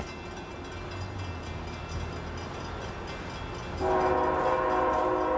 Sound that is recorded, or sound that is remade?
recorded